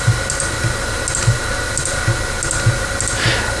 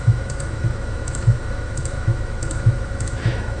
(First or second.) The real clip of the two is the first